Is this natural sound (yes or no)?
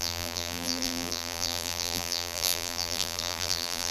no